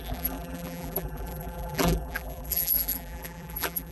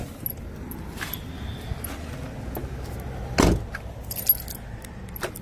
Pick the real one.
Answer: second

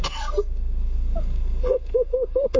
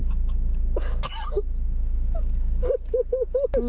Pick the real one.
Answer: second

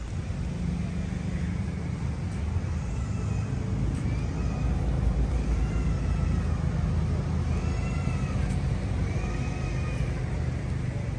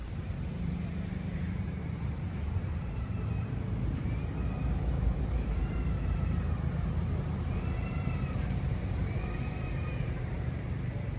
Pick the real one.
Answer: first